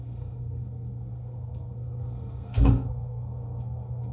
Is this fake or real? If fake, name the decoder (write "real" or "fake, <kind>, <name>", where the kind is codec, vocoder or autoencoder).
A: fake, codec, SNAC